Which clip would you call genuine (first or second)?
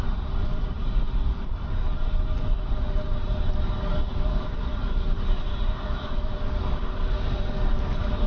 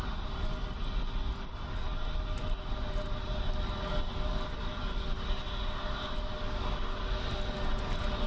second